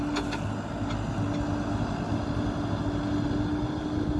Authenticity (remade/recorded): recorded